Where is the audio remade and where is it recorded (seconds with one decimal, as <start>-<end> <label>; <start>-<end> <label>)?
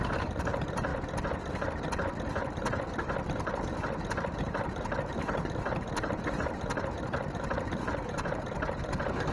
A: 0.0-0.9 remade; 0.9-4.1 recorded; 4.1-9.3 remade